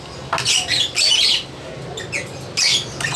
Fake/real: real